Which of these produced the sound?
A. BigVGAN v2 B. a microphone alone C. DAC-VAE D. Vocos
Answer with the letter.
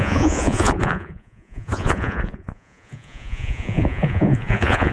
D